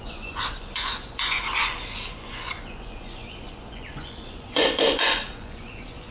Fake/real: fake